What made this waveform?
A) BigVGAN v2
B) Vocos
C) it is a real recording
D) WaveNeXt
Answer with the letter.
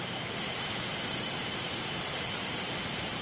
A